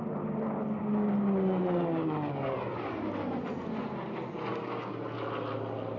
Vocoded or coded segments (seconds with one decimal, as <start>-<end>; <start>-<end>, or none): 4.5-5.0